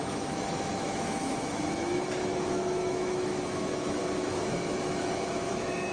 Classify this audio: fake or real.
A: fake